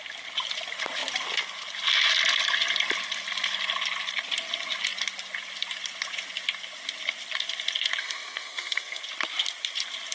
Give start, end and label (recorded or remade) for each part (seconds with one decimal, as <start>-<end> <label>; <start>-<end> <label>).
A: 0.0-8.0 recorded; 8.0-9.0 remade; 9.0-10.1 recorded